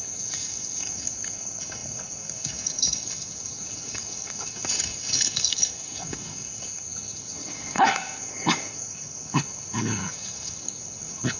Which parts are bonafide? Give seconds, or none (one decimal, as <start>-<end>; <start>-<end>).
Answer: none